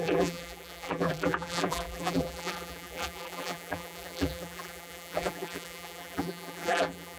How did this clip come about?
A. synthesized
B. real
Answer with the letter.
A